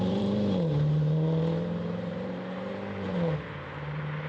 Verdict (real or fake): fake